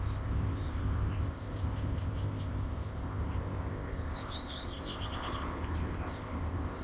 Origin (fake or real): fake